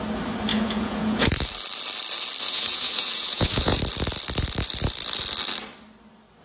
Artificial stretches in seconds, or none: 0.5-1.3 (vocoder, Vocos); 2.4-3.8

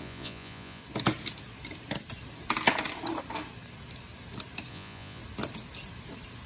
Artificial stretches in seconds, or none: 0.0-0.8 (vocoder, Vocos); 4.7-5.2

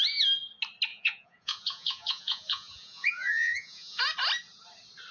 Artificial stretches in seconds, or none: 0.9-4.0 (vocoder, Vocos)

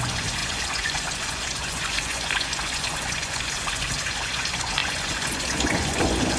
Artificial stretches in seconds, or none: 0.0-6.4 (vocoder, Vocos)

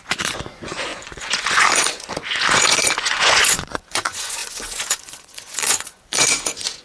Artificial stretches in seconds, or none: 0.0-6.8 (vocoder, Vocos)

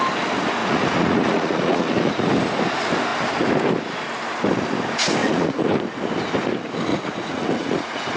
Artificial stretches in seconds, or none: 0.6-2.3 (vocoder, Vocos); 5.2-5.8; 6.9-8.2

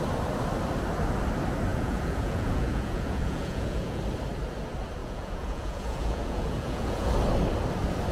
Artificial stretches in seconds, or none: 1.7-4.0 (vocoder, Vocos); 5.0-7.1